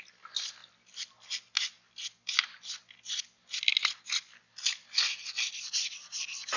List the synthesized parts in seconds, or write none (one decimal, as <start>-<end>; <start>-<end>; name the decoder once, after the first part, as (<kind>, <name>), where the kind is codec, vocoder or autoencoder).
none